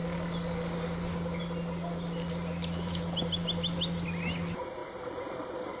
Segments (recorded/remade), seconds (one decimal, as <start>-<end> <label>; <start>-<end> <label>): 0.0-5.8 recorded